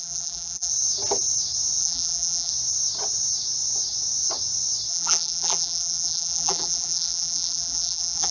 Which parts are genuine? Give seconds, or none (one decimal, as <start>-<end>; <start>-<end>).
0.7-1.8; 2.5-4.9